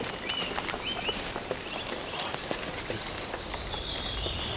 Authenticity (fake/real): real